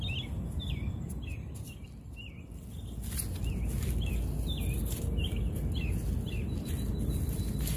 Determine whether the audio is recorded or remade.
recorded